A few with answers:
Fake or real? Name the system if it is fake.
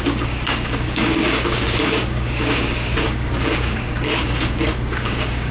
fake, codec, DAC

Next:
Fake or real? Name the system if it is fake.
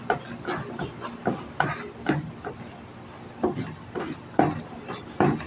real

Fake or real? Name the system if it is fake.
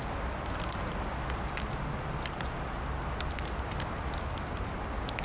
real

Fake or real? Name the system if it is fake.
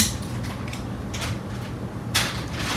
real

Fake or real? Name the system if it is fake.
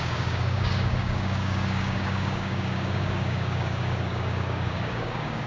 fake, codec, DAC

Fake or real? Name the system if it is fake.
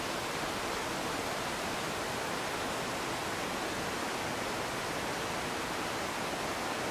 real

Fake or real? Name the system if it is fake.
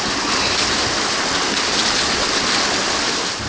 real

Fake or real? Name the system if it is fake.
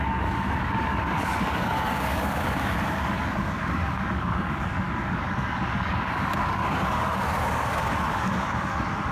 fake, codec, DAC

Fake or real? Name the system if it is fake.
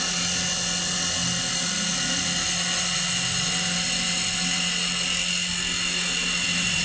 real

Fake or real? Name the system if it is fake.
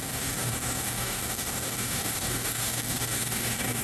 fake, codec, DAC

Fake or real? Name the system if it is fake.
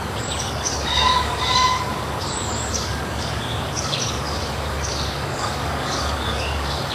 fake, codec, DAC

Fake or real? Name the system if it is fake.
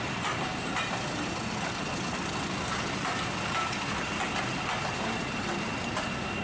real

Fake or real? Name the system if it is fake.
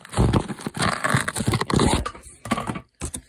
real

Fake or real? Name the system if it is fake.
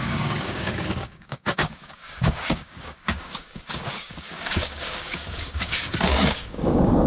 fake, codec, DAC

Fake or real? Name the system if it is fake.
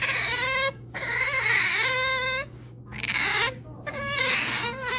fake, codec, DAC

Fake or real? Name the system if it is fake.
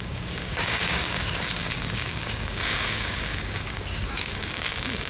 fake, codec, DAC